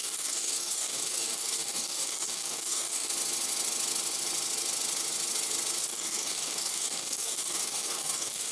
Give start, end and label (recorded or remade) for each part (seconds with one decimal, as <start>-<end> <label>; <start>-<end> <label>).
0.0-3.1 remade; 3.1-5.8 recorded; 5.8-8.5 remade